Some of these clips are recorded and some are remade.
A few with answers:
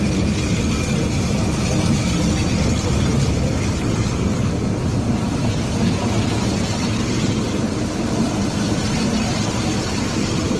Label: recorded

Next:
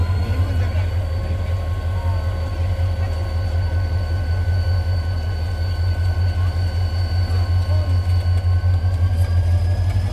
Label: recorded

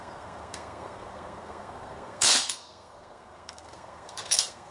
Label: remade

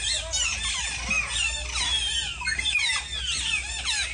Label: recorded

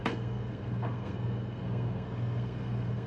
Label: remade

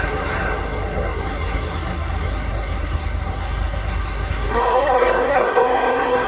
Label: remade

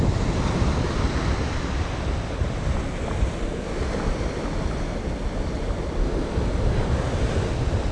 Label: recorded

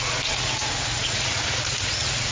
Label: remade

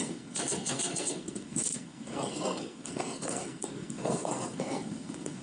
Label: remade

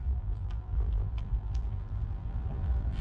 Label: remade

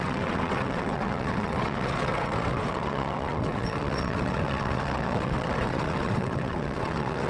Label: remade